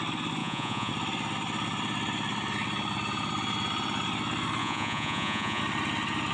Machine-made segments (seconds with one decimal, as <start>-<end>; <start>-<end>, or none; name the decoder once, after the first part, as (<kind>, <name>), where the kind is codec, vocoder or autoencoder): 0.4-0.9 (vocoder, Vocos); 4.6-5.6